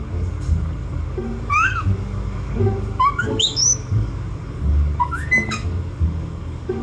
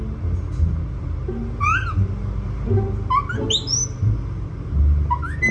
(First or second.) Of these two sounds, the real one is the second